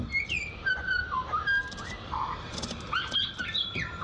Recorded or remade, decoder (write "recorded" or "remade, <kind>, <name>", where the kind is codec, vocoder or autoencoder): remade, vocoder, BigVGAN v2